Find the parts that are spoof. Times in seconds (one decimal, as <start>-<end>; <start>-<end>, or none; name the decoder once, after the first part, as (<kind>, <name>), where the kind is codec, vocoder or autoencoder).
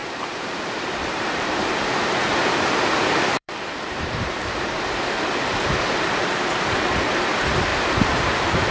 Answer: 0.0-5.2 (vocoder, BigVGAN v2); 7.7-8.7